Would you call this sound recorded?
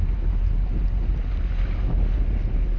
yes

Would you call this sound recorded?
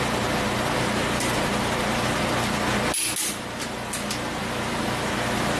yes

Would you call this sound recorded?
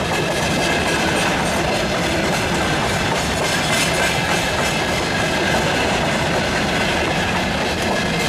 no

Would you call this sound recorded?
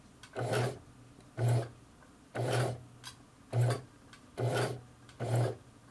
yes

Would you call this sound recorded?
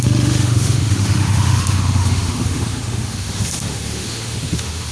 no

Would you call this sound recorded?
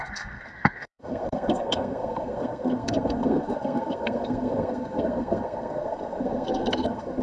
no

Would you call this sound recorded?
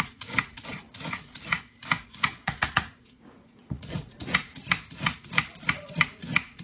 no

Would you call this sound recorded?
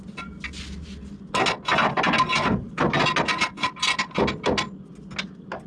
yes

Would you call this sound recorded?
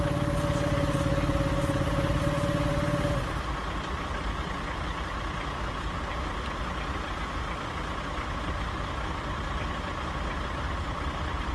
yes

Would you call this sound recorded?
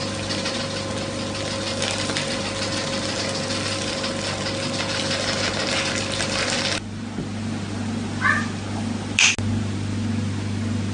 yes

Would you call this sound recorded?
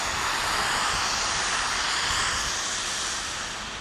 yes